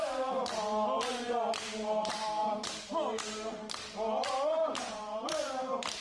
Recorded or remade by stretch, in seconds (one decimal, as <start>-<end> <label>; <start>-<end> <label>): 0.0-6.0 recorded